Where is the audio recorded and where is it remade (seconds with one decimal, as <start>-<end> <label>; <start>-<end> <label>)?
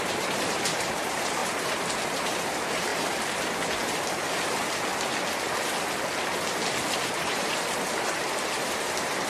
0.0-2.9 remade; 2.9-7.2 recorded; 7.2-9.3 remade